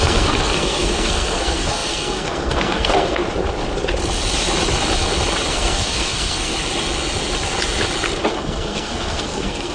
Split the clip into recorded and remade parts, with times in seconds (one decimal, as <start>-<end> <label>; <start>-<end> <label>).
0.0-3.2 remade; 3.2-5.5 recorded; 5.5-6.5 remade; 6.5-8.3 recorded; 8.3-9.7 remade